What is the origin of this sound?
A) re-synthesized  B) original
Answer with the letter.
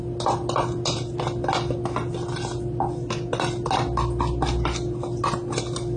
B